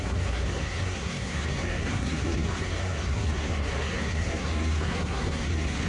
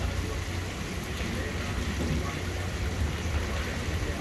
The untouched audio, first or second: second